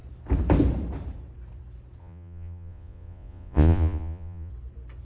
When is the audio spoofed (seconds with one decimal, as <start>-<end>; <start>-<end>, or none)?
2.0-4.5